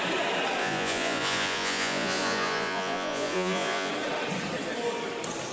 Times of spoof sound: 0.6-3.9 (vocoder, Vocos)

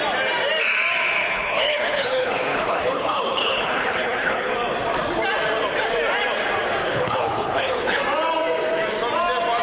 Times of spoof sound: 1.2-4.5 (codec, HILCodec); 6.8-8.0

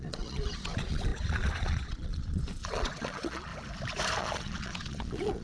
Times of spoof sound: 0.0-3.5 (vocoder, Vocos); 4.2-5.4

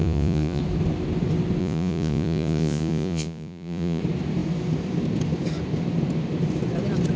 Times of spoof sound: 0.0-0.6 (vocoder, Vocos); 1.6-4.0

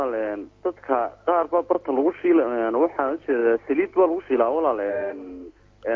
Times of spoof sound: 4.9-5.6 (autoencoder, DAC-VAE)

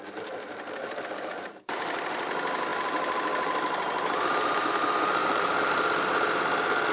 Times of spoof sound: 0.8-2.0 (vocoder, BigVGAN v2); 5.2-5.7